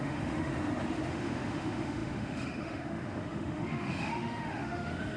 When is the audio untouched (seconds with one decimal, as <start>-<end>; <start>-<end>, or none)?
0.5-1.1